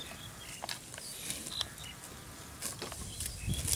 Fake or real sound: real